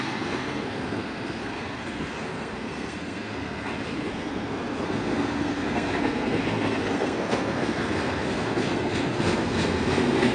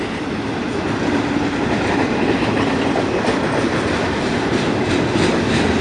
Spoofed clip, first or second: first